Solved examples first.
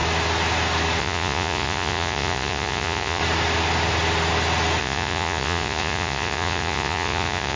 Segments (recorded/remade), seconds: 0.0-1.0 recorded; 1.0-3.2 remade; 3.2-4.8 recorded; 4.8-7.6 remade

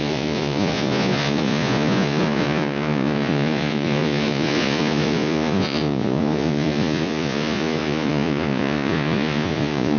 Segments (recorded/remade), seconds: 0.0-10.0 remade

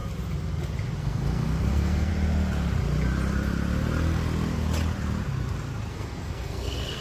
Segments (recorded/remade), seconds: 0.0-1.0 recorded; 1.0-2.1 remade; 2.1-5.9 recorded; 5.9-7.0 remade